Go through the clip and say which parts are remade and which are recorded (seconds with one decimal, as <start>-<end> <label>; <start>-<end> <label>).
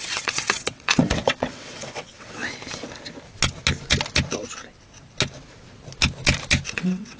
0.0-2.4 remade; 2.4-6.7 recorded; 6.7-7.2 remade